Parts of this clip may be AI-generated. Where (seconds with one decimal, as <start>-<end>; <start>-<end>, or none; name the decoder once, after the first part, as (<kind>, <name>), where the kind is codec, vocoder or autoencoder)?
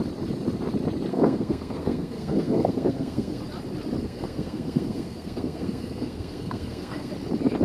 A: 1.1-3.4 (codec, SNAC); 4.0-7.1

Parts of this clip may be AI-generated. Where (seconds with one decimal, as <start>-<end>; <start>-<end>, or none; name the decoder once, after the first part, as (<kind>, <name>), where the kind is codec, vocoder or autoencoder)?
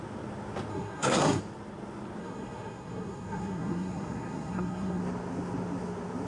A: 0.7-1.4 (codec, SNAC); 2.2-5.0